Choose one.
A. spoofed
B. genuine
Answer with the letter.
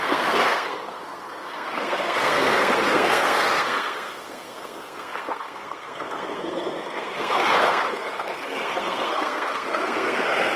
A